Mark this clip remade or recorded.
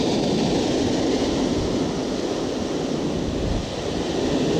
recorded